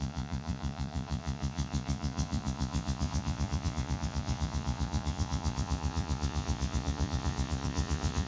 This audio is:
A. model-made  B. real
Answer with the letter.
A